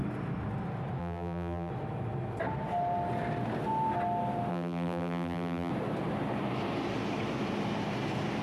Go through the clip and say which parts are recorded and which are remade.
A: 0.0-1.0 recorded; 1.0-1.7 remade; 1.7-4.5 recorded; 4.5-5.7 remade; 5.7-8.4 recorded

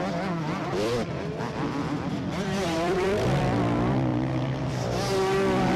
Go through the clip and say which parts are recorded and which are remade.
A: 0.0-0.6 recorded; 0.6-3.6 remade; 3.6-4.1 recorded; 4.1-4.7 remade; 4.7-5.8 recorded

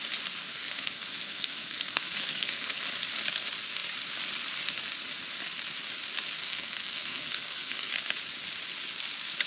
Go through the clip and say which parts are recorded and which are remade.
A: 0.0-0.4 recorded; 0.4-2.8 remade; 2.8-6.4 recorded; 6.4-7.9 remade; 7.9-9.5 recorded